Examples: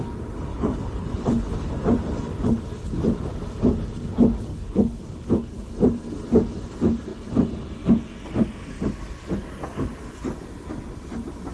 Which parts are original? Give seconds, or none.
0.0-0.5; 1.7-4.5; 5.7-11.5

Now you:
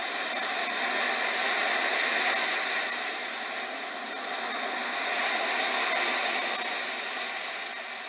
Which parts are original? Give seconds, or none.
0.0-8.1

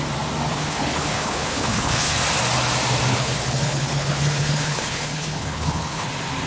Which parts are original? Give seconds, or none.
0.0-0.5; 2.2-3.1; 6.1-6.5

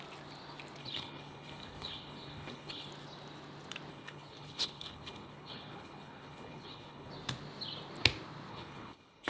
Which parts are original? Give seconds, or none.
0.0-0.8; 2.9-3.9; 7.1-8.5

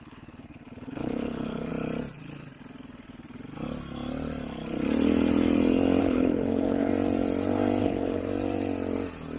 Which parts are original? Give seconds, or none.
1.7-6.0; 6.9-7.8; 8.3-9.4